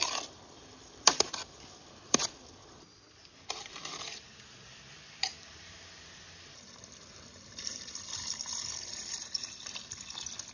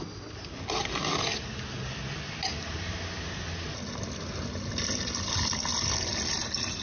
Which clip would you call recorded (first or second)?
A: second